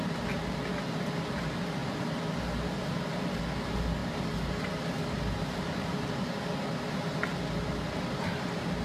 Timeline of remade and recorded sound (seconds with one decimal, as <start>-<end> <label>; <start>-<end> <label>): 0.0-8.8 recorded